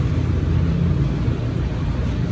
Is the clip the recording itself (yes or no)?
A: yes